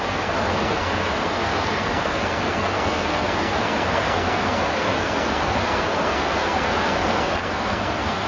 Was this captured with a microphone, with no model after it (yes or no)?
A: no